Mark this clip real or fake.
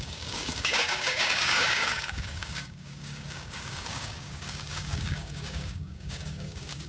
fake